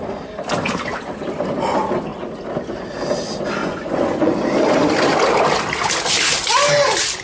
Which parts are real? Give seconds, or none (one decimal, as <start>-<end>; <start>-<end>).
0.0-3.6; 4.3-7.2